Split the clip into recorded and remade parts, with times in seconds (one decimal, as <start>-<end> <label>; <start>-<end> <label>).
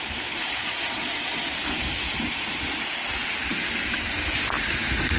0.0-0.6 recorded; 0.6-1.5 remade; 1.5-5.2 recorded